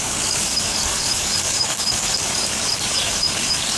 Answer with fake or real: fake